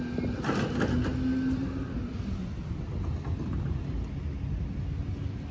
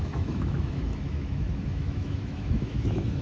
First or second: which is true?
first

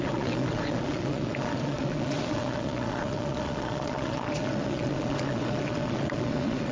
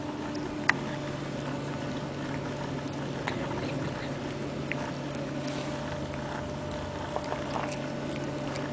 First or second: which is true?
second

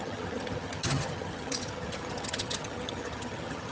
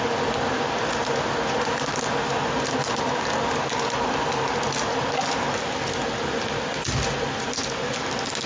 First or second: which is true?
second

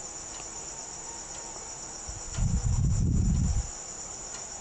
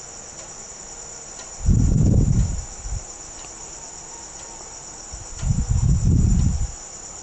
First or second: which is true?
first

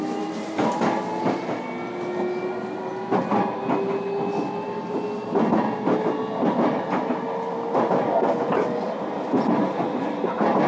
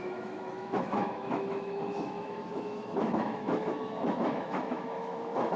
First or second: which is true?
first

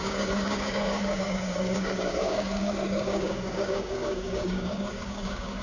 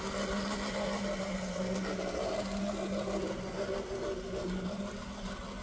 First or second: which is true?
second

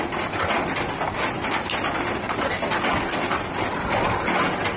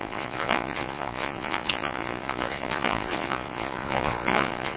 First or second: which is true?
first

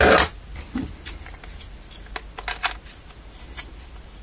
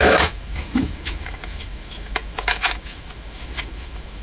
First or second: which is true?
first